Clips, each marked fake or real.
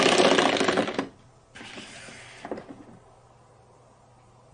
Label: real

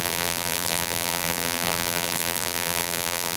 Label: fake